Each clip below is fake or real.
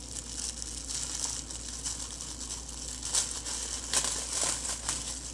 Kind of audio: real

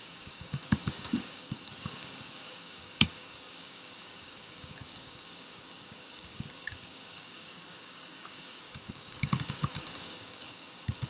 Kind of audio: fake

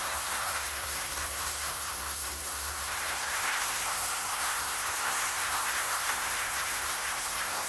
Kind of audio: fake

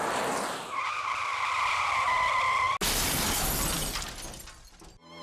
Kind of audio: real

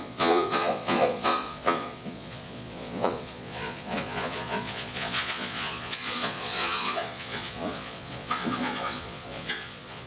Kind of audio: fake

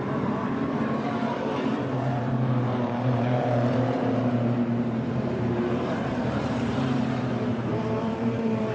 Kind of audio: fake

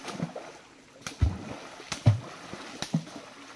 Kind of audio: real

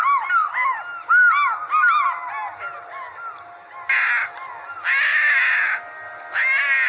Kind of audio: real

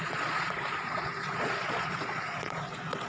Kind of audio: fake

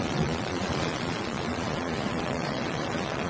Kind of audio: fake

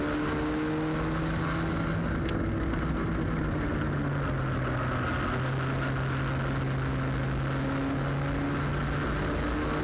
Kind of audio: real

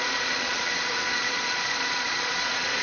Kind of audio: fake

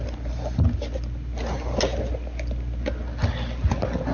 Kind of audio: real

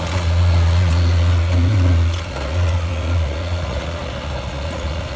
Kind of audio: fake